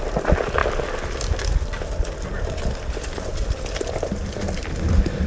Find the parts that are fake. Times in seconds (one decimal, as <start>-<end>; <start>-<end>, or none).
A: 3.3-4.0